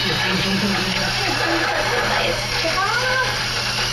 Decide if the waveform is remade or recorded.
remade